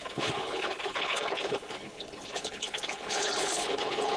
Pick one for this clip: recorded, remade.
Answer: remade